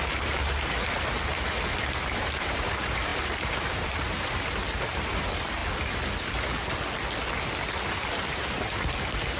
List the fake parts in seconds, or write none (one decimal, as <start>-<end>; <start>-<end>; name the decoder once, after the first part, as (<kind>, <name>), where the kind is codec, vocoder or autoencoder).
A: 0.0-0.4 (vocoder, BigVGAN v2); 2.1-5.6; 8.1-9.4